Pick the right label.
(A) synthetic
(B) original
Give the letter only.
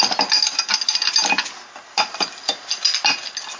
B